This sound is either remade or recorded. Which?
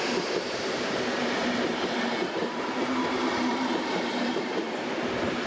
remade